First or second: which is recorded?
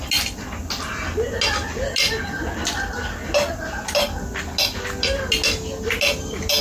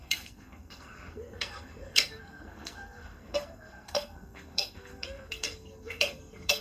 first